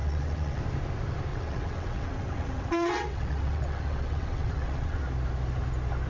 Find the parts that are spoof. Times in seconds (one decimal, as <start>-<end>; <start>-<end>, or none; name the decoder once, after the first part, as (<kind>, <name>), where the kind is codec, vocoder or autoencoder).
0.0-0.6 (vocoder, WaveNeXt); 1.3-5.0